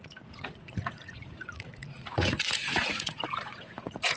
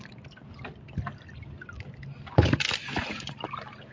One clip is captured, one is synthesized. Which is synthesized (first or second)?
first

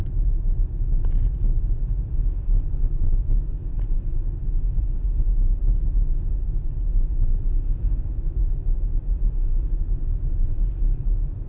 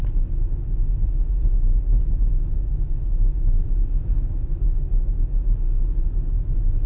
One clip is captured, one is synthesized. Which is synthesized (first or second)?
first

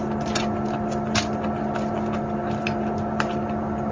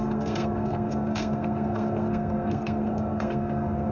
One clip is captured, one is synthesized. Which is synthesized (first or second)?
second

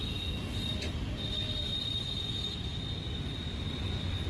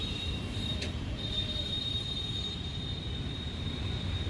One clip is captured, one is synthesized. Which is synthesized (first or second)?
second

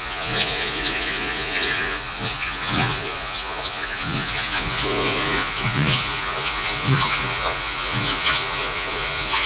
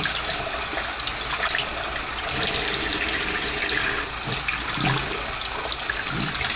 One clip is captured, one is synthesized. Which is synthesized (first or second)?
first